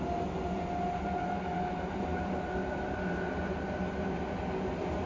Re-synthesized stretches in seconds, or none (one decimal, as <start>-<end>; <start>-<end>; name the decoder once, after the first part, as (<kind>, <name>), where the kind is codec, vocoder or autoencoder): none